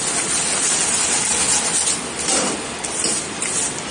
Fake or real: real